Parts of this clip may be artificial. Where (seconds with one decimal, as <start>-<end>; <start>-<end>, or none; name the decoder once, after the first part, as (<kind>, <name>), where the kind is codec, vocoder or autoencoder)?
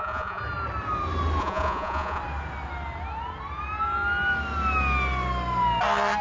0.0-0.4 (vocoder, Vocos); 1.4-2.2